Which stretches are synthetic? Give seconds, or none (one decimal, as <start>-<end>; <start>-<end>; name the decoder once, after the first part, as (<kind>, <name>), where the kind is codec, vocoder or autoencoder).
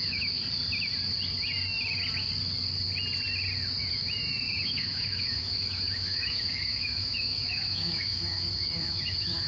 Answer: 0.0-0.4 (autoencoder, DAC-VAE); 3.9-9.5